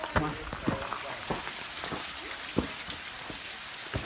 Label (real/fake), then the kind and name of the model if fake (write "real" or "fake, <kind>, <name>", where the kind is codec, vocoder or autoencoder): real